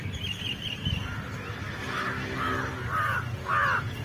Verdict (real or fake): real